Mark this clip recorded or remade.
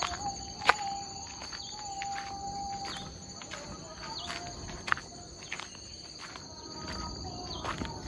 recorded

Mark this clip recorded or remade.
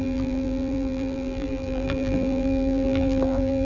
remade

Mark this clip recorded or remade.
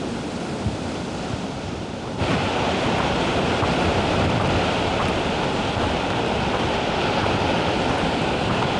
remade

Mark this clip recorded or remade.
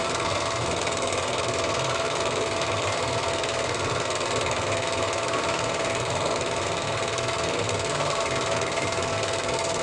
remade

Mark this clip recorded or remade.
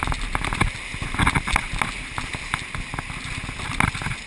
recorded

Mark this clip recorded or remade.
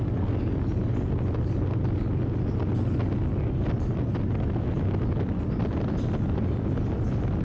recorded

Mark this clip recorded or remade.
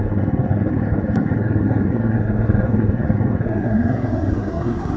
remade